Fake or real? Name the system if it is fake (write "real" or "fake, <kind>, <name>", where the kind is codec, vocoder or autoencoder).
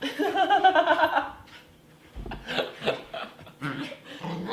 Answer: real